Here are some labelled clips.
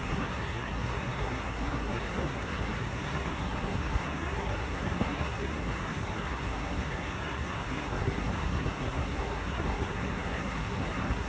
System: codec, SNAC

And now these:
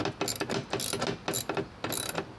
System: none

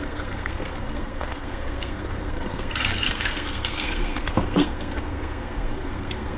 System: codec, SNAC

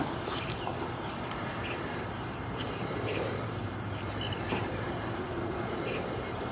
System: vocoder, BigVGAN v2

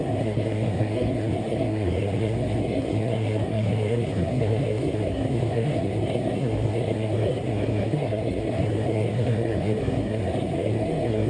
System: codec, SNAC